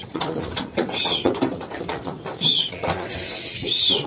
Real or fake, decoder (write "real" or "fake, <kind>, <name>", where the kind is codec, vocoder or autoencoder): fake, vocoder, WaveNeXt